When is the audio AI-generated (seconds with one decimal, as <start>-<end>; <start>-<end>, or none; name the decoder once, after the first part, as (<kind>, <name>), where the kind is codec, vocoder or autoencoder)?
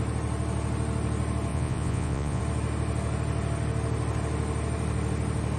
1.5-2.4 (vocoder, Vocos)